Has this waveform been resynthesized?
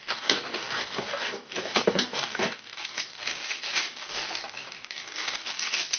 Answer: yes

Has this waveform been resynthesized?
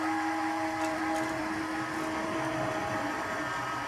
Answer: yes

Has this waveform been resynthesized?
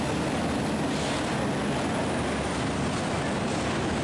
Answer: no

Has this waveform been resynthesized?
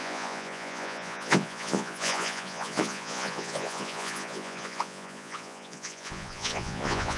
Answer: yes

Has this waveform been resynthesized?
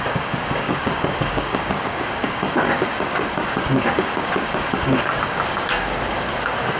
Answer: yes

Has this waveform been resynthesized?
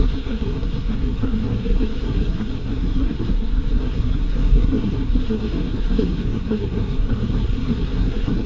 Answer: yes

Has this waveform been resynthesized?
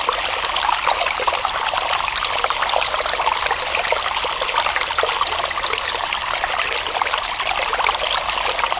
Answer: no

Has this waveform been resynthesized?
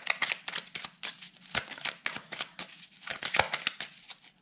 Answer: no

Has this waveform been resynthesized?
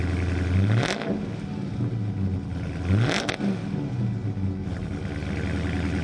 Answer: no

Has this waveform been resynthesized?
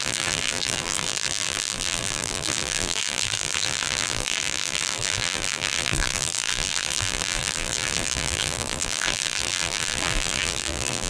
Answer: yes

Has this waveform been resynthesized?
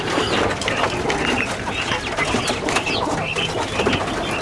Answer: no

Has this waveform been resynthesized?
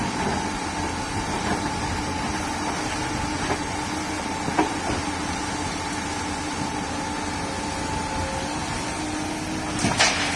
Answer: no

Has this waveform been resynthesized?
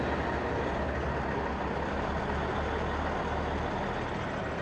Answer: no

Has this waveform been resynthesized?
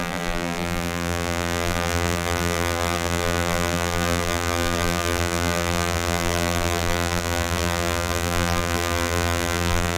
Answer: yes